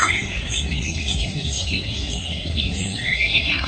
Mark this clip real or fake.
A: fake